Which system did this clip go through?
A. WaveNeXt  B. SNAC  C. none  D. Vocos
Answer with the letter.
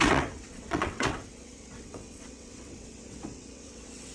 A